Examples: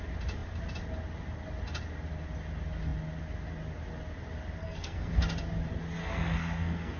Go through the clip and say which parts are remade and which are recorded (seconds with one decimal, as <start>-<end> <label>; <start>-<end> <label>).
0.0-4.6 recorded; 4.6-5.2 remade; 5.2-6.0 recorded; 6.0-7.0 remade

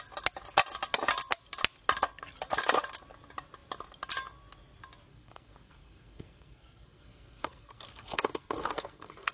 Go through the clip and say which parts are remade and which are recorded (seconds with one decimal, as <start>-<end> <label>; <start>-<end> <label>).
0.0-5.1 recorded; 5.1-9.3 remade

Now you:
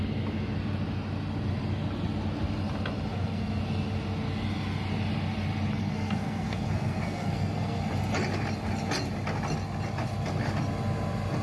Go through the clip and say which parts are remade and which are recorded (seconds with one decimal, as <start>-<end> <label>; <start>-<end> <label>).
0.0-3.1 recorded; 3.1-3.6 remade; 3.6-5.8 recorded; 5.8-7.8 remade; 7.8-11.4 recorded

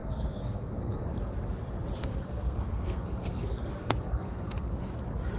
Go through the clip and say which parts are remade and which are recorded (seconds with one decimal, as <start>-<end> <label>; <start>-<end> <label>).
0.0-1.0 remade; 1.0-2.0 recorded; 2.0-4.8 remade; 4.8-5.4 recorded